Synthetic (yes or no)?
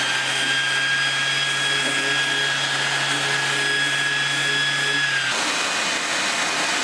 no